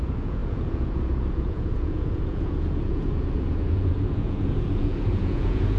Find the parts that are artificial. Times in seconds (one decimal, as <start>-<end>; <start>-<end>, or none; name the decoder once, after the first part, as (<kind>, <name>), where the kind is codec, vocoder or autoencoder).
0.0-5.8 (vocoder, Vocos)